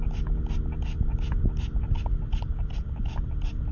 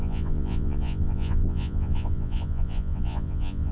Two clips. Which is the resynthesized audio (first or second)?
second